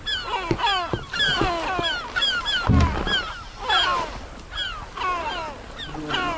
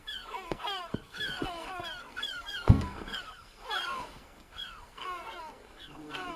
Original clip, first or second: first